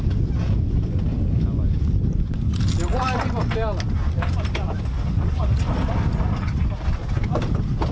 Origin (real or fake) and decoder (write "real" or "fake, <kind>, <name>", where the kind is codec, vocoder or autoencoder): real